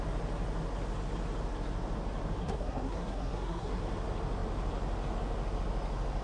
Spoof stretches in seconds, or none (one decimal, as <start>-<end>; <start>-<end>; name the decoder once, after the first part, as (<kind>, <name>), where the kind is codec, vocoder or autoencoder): 2.4-3.8 (codec, SNAC)